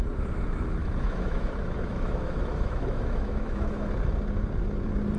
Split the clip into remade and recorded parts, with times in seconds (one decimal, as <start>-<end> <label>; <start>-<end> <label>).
0.0-0.8 recorded; 0.8-3.9 remade; 3.9-5.2 recorded